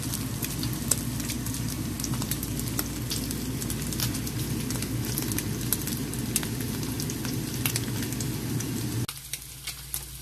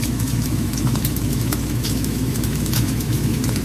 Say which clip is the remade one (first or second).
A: second